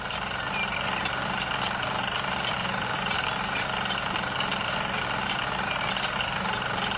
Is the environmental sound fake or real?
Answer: real